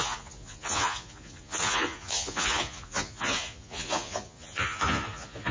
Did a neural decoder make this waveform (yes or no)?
yes